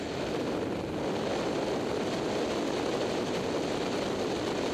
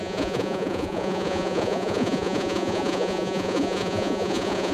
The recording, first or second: first